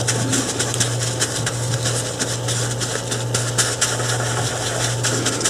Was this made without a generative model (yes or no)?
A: yes